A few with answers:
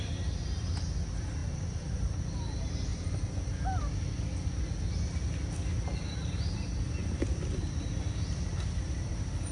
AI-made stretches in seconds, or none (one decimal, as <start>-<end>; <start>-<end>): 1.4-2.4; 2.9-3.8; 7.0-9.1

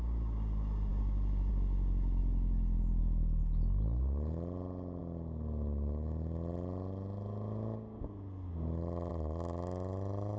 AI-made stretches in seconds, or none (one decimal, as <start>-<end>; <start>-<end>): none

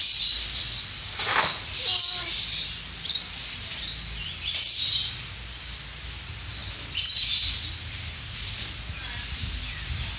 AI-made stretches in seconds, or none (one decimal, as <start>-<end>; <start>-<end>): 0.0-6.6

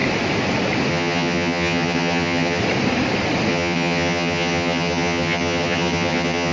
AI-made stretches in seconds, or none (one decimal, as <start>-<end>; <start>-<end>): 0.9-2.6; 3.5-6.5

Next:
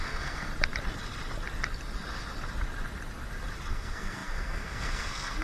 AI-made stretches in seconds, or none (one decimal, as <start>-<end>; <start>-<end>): 0.0-0.5; 3.7-5.4

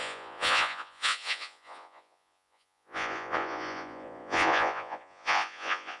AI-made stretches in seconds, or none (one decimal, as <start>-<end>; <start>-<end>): 0.0-6.0